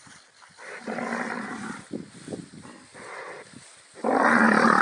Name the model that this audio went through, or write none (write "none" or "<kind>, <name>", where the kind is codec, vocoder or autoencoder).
vocoder, BigVGAN v2